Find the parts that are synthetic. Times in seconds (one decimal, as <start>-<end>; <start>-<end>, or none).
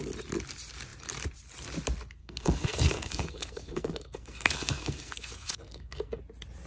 2.2-6.2